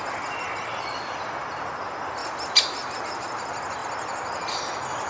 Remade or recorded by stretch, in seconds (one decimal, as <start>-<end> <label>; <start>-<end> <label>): 0.0-5.1 recorded

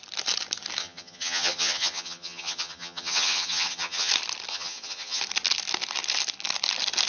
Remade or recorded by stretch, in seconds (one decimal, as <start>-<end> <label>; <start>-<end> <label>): 0.0-0.8 recorded; 0.8-4.1 remade; 4.1-4.5 recorded; 4.5-5.2 remade; 5.2-7.1 recorded

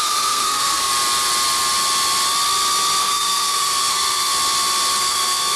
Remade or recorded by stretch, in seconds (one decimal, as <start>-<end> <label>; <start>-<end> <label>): 0.0-0.9 remade; 0.9-3.0 recorded; 3.0-4.3 remade; 4.3-5.0 recorded; 5.0-5.6 remade

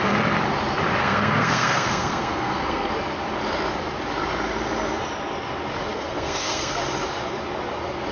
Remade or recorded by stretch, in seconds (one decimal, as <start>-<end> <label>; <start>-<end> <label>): 0.0-1.0 recorded; 1.0-2.9 remade; 2.9-5.9 recorded; 5.9-6.7 remade; 6.7-8.1 recorded

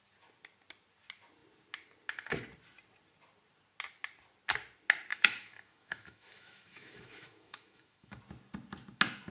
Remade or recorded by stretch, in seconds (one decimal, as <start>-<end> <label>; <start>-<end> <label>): 0.0-5.1 recorded; 5.1-8.2 remade; 8.2-9.3 recorded

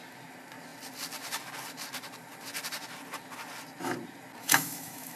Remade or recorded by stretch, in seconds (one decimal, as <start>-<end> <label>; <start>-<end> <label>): 0.0-4.4 recorded; 4.4-5.2 remade

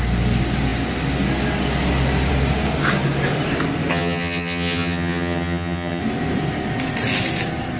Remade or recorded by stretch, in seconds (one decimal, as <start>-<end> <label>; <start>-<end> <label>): 0.0-3.9 recorded; 3.9-6.0 remade; 6.0-7.8 recorded